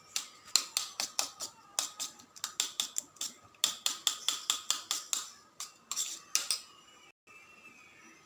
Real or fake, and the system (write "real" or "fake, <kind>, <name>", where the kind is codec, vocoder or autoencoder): real